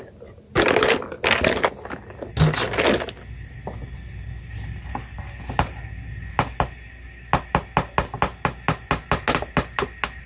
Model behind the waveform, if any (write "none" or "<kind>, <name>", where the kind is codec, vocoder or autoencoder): none